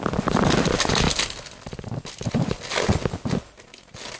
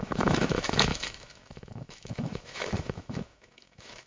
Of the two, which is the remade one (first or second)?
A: second